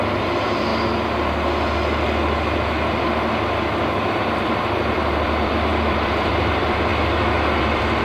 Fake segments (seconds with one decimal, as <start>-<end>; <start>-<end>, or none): 0.0-0.7; 4.4-6.9; 7.6-8.0